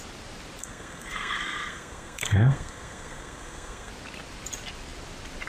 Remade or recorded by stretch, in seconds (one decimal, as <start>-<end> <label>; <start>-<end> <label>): 0.0-0.6 recorded; 0.6-3.9 remade; 3.9-5.5 recorded